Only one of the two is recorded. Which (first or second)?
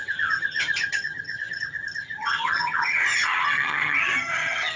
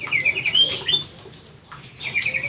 second